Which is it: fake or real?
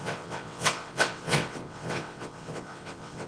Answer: fake